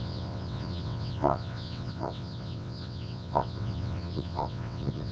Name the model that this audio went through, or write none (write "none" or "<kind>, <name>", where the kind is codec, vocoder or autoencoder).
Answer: vocoder, WaveNeXt